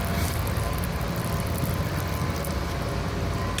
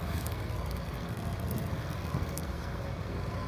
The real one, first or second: first